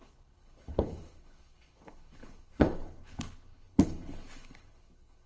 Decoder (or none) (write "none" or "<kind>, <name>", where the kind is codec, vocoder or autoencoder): codec, HILCodec